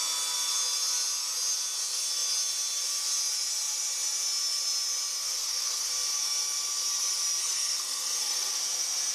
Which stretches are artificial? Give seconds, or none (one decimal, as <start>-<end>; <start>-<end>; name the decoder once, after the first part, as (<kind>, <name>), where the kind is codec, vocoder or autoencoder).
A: 5.2-5.9 (codec, SNAC); 7.4-8.5